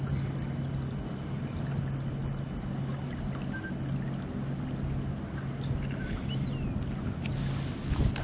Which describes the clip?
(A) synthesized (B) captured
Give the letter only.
B